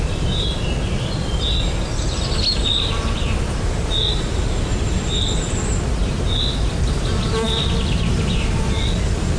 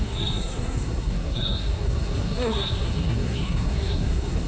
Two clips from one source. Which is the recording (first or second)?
first